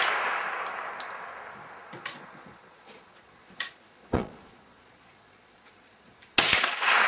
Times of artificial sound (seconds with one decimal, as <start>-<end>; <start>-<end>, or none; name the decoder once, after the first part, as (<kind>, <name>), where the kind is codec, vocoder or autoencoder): 1.8-6.1 (vocoder, Vocos)